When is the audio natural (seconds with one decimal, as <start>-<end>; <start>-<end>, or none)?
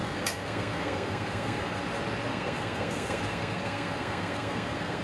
1.8-2.3